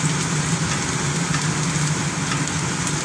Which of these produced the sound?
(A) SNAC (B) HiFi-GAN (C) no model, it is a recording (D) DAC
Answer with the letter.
C